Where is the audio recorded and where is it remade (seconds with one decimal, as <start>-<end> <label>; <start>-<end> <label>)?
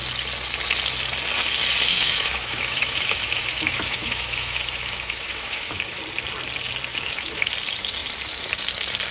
0.0-1.9 recorded; 1.9-6.0 remade; 6.0-6.9 recorded; 6.9-7.5 remade; 7.5-9.1 recorded